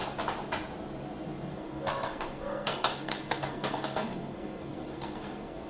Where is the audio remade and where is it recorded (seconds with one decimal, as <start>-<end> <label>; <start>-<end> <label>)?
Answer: 0.0-1.5 recorded; 1.5-5.7 remade